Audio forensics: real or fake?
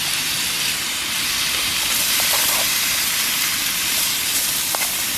fake